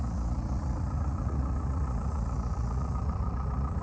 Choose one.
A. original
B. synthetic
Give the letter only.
B